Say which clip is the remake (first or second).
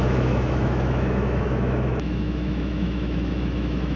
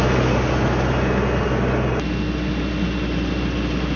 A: first